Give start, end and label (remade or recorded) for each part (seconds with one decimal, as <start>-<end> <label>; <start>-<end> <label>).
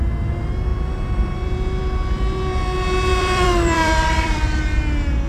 0.0-0.7 recorded; 0.7-1.8 remade; 1.8-3.1 recorded; 3.1-4.6 remade; 4.6-5.3 recorded